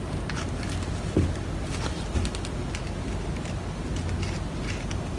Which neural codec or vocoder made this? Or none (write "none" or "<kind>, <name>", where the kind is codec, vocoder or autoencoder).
none